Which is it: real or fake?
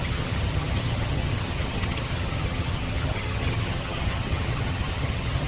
fake